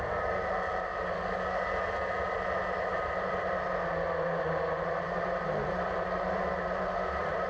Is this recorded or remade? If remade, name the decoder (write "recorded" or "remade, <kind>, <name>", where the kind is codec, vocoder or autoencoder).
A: recorded